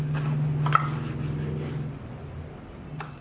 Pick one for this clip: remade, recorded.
recorded